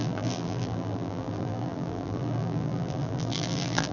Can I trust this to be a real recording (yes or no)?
no